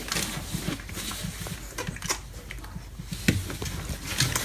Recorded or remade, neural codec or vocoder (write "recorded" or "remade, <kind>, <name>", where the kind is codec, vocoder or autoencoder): recorded